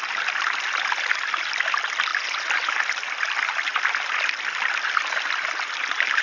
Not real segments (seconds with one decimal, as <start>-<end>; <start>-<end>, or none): none